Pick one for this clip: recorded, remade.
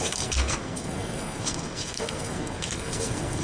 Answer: remade